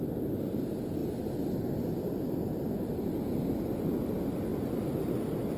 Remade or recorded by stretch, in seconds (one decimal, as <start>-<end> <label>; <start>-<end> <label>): 0.0-5.6 recorded